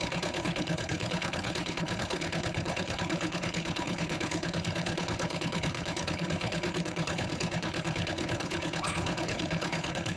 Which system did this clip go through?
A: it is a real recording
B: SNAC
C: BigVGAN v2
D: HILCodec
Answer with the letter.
D